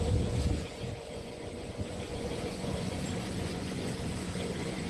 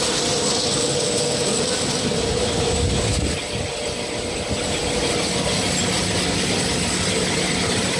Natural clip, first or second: second